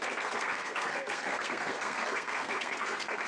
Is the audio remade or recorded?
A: remade